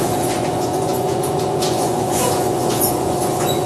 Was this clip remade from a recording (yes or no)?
yes